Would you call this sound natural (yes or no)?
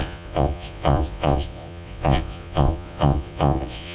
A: no